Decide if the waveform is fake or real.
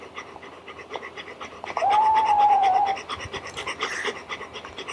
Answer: real